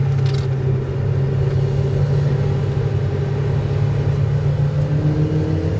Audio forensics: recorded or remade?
recorded